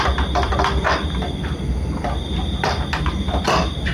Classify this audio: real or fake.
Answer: fake